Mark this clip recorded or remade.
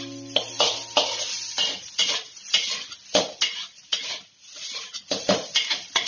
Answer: recorded